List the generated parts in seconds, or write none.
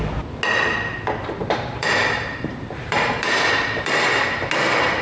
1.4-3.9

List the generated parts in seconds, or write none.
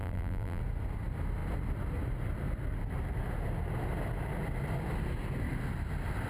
0.0-0.6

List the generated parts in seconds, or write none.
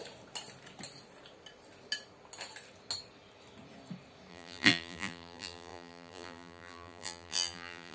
4.3-7.9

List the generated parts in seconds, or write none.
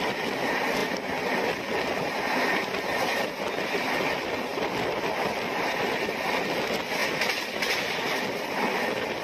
4.5-6.4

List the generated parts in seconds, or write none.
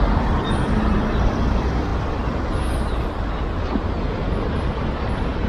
0.0-1.9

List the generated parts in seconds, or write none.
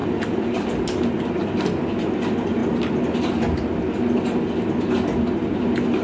none